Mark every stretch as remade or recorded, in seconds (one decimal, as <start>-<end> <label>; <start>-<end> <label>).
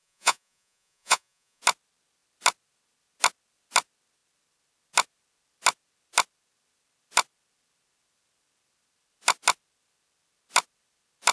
0.0-1.6 remade; 1.6-11.3 recorded